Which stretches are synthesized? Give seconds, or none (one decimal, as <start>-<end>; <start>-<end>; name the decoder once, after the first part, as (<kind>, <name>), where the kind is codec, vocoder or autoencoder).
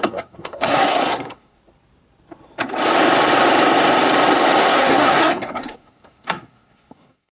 0.0-1.6 (codec, SNAC); 4.6-7.3